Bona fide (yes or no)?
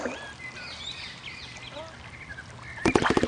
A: yes